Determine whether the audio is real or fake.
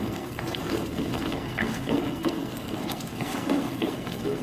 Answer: fake